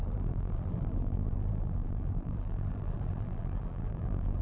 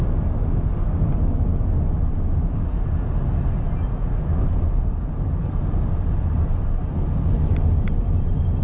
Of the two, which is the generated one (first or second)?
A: first